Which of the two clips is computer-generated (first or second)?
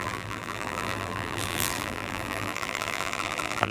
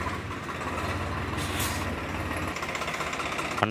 first